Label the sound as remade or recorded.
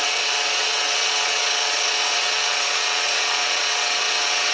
remade